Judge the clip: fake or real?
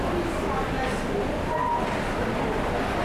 real